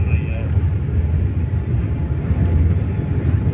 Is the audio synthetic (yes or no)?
no